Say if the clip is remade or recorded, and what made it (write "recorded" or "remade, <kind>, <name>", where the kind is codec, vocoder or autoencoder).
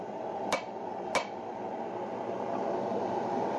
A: recorded